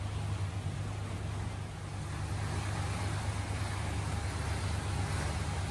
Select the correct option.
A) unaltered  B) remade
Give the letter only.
A